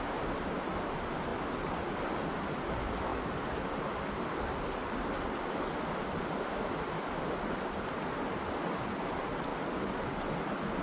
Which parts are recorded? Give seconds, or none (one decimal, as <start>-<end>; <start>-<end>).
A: 0.0-10.8